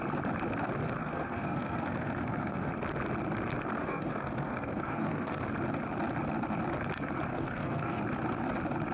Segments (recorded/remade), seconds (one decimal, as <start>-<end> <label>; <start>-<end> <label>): 0.0-1.0 recorded; 1.0-2.7 remade; 2.7-3.8 recorded; 3.8-5.4 remade; 5.4-7.3 recorded; 7.3-8.0 remade; 8.0-8.9 recorded